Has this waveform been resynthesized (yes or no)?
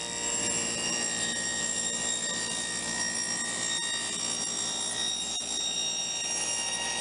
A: no